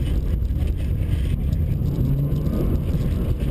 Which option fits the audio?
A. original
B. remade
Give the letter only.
A